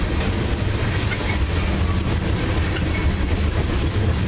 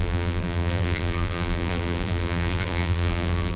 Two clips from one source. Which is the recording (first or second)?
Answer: first